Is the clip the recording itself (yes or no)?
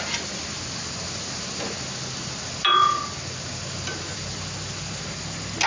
yes